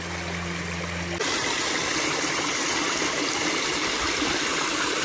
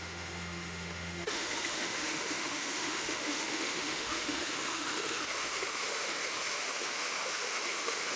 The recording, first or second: first